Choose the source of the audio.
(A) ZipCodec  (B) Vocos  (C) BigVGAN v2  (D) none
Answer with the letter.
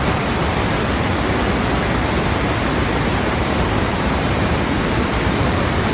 C